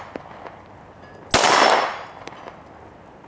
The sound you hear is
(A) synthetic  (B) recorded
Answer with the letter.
B